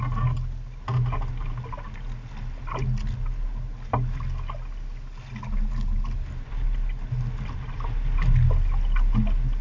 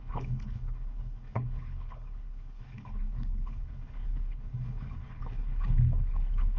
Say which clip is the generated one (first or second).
second